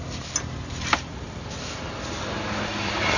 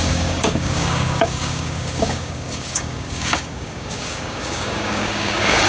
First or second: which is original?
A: first